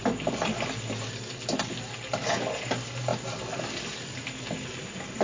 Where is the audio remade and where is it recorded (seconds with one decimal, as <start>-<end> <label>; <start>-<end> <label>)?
0.0-5.2 recorded